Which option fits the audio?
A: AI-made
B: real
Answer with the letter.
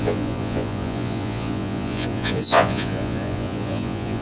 A